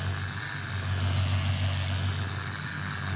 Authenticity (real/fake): real